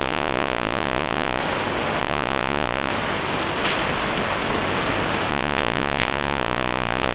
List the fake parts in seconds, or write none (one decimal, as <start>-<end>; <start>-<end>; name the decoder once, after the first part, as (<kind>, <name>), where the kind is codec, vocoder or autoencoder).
0.0-1.4 (vocoder, Vocos); 2.0-2.9; 5.3-7.1

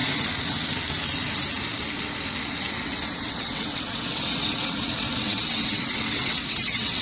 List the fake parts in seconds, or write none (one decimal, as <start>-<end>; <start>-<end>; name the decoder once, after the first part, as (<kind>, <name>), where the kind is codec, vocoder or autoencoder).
2.7-7.0 (vocoder, WaveNeXt)

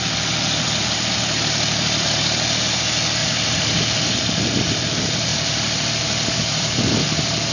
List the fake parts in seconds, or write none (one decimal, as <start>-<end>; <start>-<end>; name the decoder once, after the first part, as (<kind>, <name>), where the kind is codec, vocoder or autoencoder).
0.8-2.2 (vocoder, BigVGAN v2)